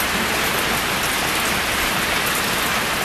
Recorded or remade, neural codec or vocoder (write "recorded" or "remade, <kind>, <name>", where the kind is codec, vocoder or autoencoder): recorded